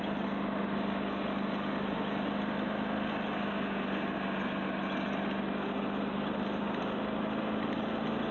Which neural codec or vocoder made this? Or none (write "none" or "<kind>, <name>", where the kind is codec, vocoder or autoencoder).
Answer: none